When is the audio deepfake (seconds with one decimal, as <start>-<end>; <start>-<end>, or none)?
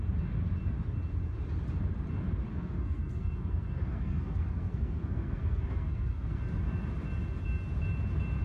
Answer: 2.5-6.4